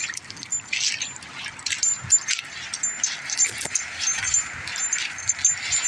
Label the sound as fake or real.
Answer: real